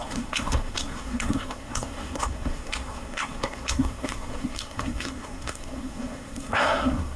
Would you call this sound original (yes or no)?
no